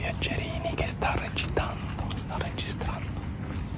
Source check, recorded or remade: recorded